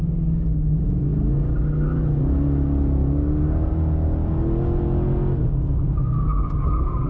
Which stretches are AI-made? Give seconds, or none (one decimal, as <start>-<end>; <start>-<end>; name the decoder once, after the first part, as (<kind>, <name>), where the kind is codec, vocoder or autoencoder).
none

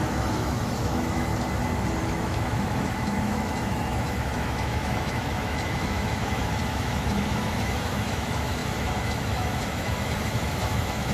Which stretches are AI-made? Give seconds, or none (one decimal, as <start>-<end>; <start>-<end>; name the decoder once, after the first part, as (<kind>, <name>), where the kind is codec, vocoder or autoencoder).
0.0-1.3 (autoencoder, DAC-VAE); 2.0-11.1

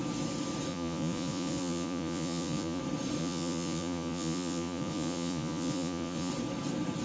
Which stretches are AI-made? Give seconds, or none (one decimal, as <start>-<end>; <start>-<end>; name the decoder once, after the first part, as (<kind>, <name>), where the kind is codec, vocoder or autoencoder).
0.7-2.8 (vocoder, Vocos); 3.2-6.3

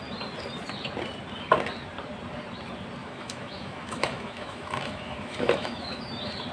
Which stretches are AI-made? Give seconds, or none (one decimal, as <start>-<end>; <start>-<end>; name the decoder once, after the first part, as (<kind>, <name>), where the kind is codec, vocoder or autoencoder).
3.0-6.0 (autoencoder, DAC-VAE)

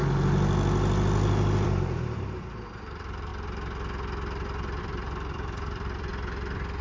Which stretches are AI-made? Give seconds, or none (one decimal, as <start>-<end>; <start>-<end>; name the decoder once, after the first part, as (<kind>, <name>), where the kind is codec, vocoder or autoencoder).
0.0-3.3 (vocoder, BigVGAN v2); 4.8-6.1

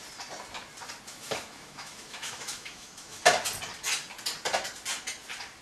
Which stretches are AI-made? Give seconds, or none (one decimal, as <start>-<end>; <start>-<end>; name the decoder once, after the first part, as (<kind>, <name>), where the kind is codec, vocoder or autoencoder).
1.1-3.2 (autoencoder, DAC-VAE)

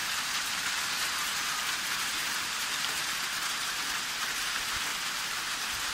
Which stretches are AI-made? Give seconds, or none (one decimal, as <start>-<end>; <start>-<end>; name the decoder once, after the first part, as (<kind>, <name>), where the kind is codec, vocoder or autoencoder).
0.0-4.9 (vocoder, BigVGAN v2)